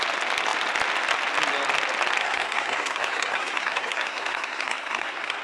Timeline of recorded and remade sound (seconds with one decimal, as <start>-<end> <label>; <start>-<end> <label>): 0.0-2.2 recorded; 2.2-5.4 remade